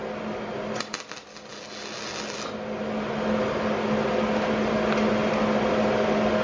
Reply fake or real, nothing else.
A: real